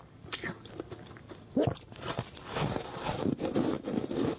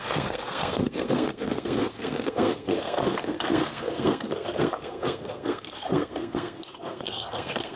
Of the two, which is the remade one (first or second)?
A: second